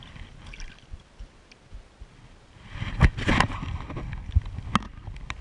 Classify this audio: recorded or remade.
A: recorded